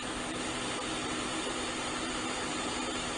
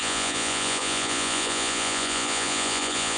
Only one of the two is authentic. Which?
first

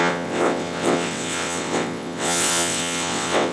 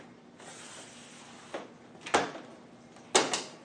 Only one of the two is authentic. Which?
second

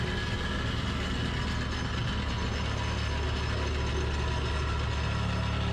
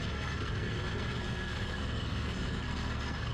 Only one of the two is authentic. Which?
first